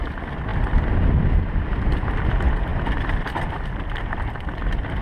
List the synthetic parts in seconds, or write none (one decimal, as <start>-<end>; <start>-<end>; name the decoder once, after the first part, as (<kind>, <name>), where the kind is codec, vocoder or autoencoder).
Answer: 0.5-1.2 (vocoder, BigVGAN v2)